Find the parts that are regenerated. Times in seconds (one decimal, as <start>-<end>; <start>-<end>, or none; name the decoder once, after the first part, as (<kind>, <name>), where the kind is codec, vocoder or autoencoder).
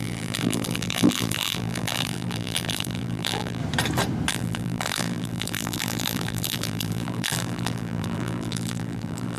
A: 0.0-3.6 (vocoder, BigVGAN v2); 4.3-9.4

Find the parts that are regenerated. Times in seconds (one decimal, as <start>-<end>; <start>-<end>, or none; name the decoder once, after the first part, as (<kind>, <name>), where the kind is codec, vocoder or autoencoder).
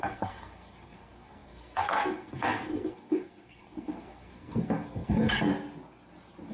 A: 0.0-5.5 (codec, SNAC)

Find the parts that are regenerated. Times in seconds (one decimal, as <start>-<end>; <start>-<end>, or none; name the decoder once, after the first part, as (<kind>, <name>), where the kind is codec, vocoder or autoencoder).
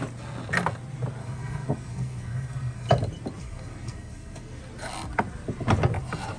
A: 1.2-2.9 (codec, SNAC); 3.4-4.6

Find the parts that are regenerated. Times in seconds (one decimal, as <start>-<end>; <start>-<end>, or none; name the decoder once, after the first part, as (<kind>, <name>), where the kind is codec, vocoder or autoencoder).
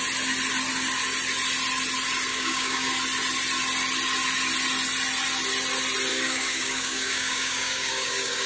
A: 2.3-2.9 (codec, DAC); 6.1-8.5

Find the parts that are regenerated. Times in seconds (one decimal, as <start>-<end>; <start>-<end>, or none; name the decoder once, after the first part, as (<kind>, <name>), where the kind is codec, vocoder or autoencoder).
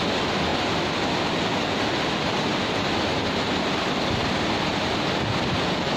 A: none